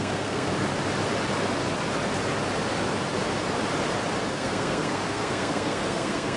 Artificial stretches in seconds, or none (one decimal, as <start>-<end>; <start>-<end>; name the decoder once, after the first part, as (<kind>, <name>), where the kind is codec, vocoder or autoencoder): 0.0-0.5 (codec, SNAC); 4.3-6.4